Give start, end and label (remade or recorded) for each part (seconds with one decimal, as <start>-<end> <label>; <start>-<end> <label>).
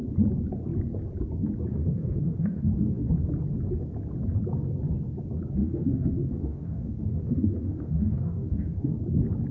0.0-1.7 recorded; 1.7-3.1 remade; 3.1-5.6 recorded; 5.6-9.0 remade; 9.0-9.5 recorded